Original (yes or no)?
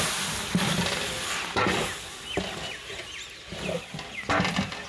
yes